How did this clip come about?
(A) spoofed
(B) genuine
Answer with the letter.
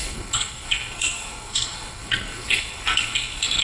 A